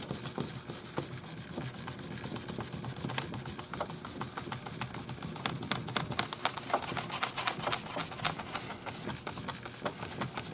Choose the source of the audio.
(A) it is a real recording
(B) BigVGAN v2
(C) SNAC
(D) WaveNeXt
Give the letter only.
A